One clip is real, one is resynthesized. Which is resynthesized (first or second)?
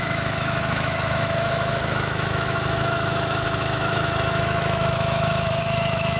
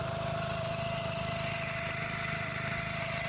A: first